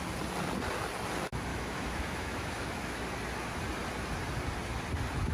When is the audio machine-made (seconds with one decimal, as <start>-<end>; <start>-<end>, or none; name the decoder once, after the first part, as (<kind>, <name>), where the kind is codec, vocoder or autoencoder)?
1.5-3.0 (autoencoder, DAC-VAE)